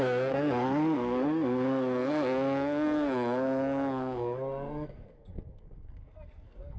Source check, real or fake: fake